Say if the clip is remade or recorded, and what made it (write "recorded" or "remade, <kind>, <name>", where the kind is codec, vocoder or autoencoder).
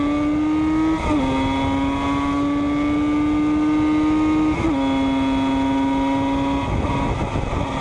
recorded